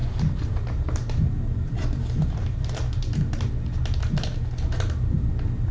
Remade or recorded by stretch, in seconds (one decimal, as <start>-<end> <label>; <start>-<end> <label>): 0.0-3.4 remade; 3.4-5.7 recorded